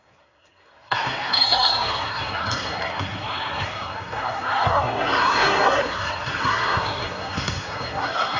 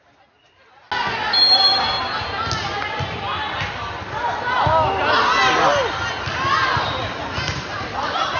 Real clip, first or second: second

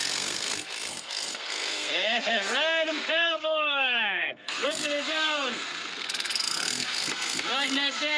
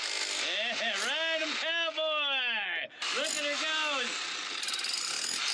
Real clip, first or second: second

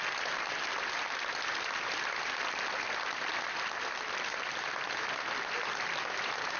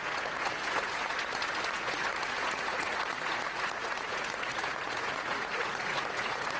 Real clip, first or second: first